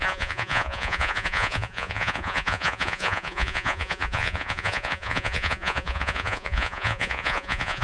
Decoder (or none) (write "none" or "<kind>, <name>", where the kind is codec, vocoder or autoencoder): vocoder, Vocos